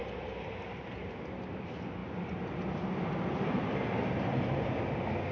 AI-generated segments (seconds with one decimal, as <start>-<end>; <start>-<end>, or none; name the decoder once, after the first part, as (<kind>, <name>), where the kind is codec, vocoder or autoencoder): none